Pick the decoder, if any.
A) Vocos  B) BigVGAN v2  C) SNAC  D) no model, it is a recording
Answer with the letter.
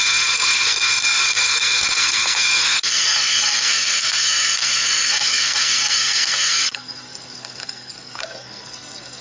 C